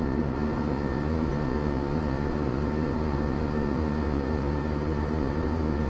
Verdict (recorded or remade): remade